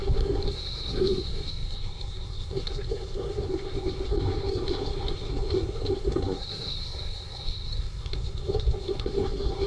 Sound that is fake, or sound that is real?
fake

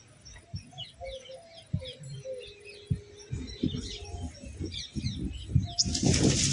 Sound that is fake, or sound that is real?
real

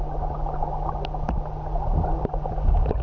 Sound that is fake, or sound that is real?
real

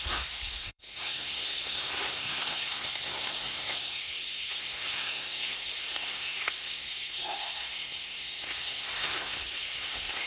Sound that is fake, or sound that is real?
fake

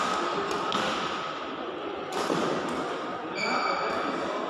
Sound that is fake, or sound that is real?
real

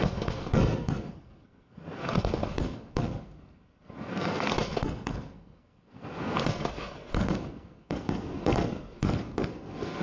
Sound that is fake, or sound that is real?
fake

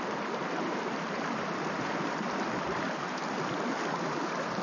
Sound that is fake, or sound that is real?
real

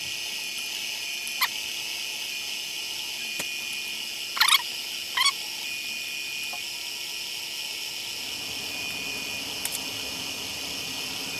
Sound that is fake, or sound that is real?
real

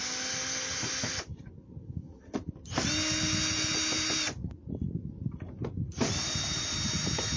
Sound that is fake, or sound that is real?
real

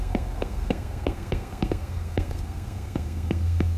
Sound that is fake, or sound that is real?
fake